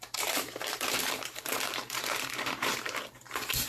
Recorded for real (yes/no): no